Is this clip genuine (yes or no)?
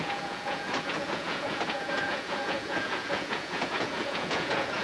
no